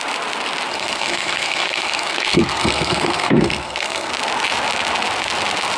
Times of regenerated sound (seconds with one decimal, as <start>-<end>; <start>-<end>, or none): 0.7-4.1